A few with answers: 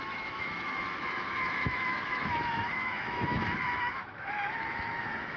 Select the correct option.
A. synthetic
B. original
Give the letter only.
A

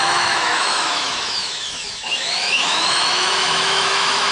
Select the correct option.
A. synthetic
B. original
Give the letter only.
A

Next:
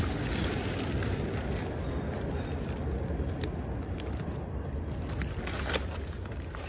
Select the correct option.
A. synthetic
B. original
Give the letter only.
B